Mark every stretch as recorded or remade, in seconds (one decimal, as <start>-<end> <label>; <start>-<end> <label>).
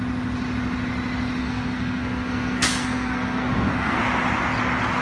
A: 0.0-1.4 recorded; 1.4-4.0 remade; 4.0-5.0 recorded